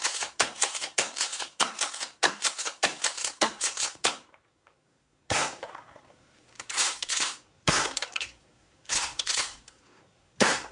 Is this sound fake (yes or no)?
yes